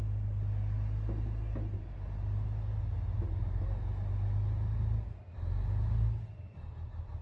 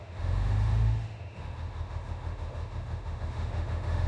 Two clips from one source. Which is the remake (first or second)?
second